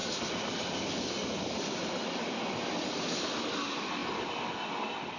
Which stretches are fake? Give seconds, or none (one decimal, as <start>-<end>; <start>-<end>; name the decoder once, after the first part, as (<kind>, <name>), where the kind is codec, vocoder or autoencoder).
0.0-2.1 (vocoder, BigVGAN v2)